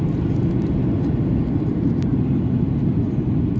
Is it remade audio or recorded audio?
recorded